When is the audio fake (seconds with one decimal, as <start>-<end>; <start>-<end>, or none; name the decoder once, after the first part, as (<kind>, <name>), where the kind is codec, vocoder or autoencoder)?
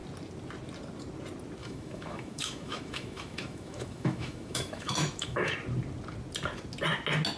1.6-5.5 (autoencoder, DAC-VAE)